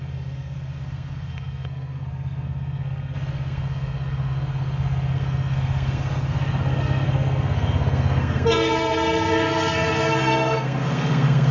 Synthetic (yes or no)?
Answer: yes